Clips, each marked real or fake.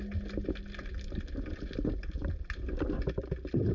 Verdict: real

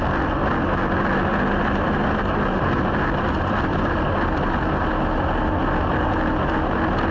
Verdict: real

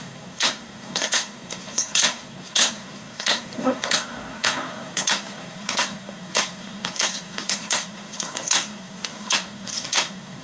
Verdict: fake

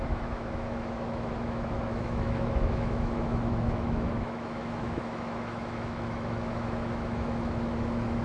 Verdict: fake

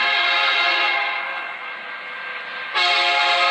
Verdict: real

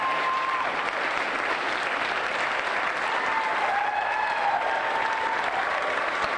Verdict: real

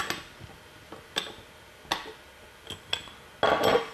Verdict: real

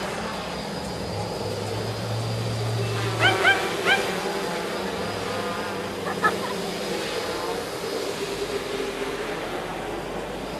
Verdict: real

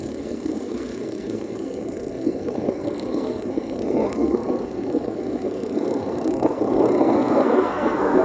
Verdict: fake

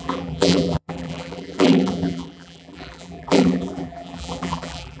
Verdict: fake